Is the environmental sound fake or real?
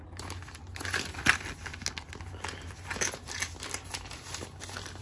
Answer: real